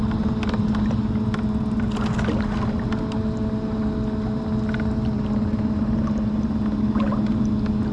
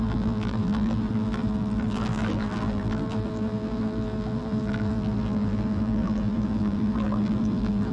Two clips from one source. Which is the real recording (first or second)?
first